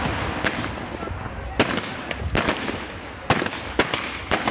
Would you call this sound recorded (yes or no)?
yes